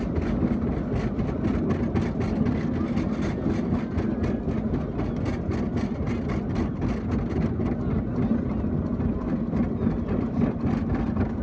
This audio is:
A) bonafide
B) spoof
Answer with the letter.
A